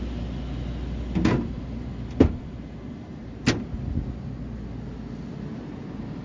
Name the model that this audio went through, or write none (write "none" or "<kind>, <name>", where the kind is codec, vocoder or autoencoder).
none